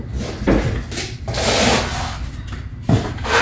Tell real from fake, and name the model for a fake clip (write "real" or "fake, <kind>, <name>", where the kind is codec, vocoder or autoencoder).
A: real